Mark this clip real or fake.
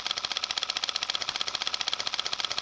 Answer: real